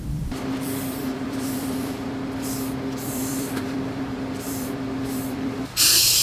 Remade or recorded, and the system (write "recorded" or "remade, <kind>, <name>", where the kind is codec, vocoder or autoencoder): remade, vocoder, BigVGAN v2